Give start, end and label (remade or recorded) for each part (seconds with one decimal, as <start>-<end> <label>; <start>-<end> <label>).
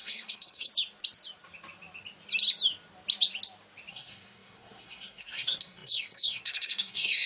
0.0-0.7 remade; 0.7-3.9 recorded; 3.9-7.3 remade